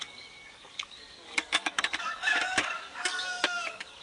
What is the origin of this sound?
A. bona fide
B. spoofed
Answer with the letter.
B